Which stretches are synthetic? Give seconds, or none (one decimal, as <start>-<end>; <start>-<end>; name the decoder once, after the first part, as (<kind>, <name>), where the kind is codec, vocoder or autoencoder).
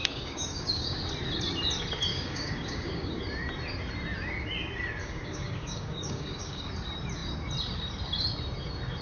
0.0-1.0 (codec, DAC); 2.1-3.2; 5.0-6.7